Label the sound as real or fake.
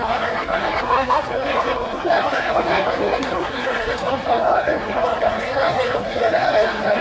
fake